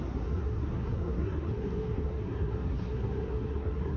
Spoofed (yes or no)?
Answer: yes